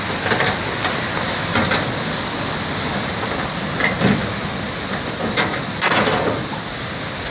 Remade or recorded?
recorded